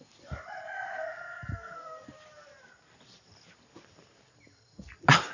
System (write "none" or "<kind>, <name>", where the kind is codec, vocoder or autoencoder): none